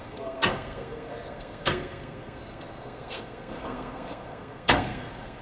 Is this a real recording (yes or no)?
no